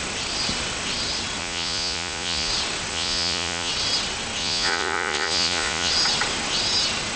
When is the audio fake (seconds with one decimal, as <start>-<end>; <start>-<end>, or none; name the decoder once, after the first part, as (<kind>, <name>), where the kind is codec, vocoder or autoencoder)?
1.4-2.5 (vocoder, Vocos); 2.9-3.7; 4.4-5.9